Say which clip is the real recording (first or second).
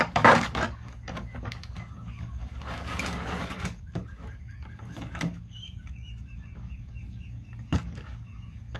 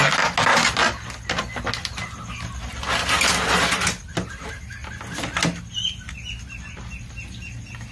second